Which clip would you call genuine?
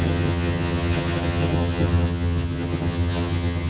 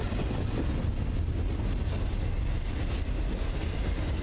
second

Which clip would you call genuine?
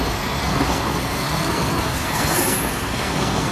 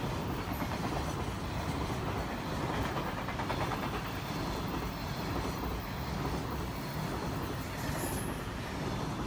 second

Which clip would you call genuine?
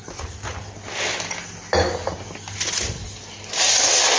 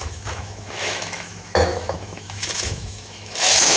first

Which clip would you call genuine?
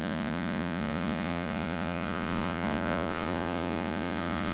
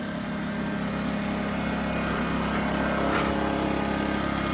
second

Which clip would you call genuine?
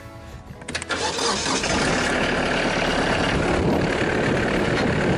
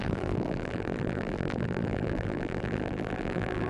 first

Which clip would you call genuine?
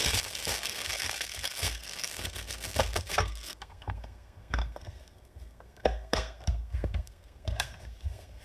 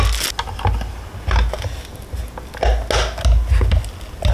second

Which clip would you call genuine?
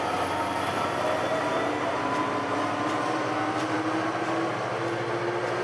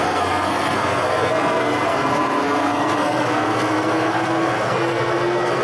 first